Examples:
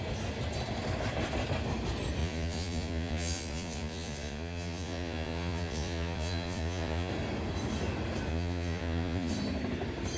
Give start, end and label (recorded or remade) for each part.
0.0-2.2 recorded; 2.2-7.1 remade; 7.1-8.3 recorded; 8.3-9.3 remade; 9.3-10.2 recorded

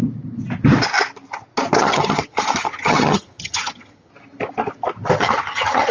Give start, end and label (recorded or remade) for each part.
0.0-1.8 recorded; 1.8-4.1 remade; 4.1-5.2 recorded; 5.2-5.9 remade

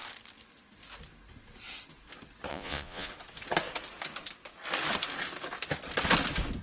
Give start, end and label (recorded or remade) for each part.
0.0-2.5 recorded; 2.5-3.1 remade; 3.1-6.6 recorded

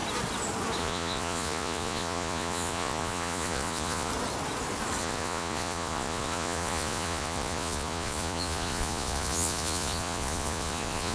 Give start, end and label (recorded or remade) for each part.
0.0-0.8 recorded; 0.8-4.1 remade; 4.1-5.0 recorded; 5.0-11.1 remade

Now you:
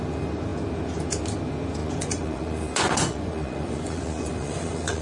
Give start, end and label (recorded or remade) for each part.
0.0-1.8 recorded; 1.8-5.0 remade